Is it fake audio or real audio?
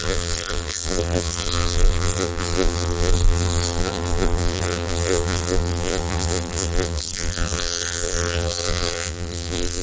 fake